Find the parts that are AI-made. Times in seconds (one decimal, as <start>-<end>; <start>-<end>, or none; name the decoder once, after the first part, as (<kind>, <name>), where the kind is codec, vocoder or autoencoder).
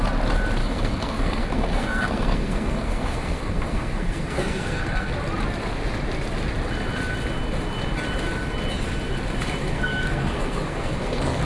0.6-5.1 (codec, SNAC); 9.6-11.4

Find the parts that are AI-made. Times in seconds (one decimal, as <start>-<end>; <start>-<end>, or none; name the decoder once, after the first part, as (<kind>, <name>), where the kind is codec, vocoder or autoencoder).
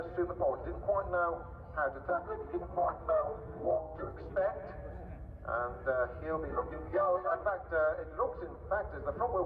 2.1-4.3 (codec, SNAC); 6.5-7.4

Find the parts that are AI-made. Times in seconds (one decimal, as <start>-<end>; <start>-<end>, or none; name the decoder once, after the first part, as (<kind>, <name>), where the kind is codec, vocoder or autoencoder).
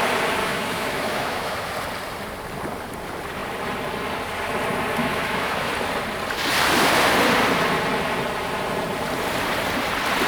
0.4-1.7 (autoencoder, DAC-VAE); 5.0-5.7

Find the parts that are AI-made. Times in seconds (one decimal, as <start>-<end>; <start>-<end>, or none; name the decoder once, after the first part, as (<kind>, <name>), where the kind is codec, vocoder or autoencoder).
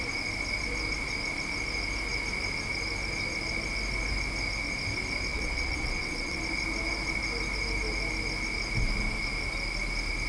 5.3-6.4 (vocoder, WaveNeXt)